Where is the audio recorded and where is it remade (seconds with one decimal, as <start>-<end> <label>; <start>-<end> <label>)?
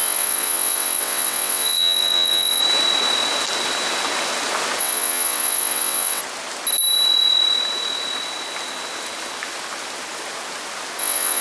0.0-2.6 remade; 2.6-4.8 recorded; 4.8-6.2 remade; 6.2-11.0 recorded; 11.0-11.4 remade